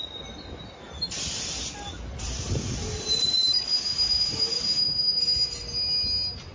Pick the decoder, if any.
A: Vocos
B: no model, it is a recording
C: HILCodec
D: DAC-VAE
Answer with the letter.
B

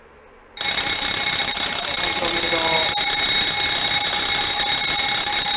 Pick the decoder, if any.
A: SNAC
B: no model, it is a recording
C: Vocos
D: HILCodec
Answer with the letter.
B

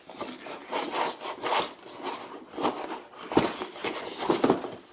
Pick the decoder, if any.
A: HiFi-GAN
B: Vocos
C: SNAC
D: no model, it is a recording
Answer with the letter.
D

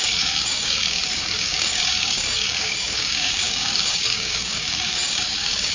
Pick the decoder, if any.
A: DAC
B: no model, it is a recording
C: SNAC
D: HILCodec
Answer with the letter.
A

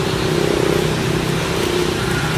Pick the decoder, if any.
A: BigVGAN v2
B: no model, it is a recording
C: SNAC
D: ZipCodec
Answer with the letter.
A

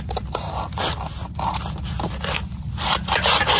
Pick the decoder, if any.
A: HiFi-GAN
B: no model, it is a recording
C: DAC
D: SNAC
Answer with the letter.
B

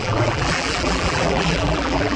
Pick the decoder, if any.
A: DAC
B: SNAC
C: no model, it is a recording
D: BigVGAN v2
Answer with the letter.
D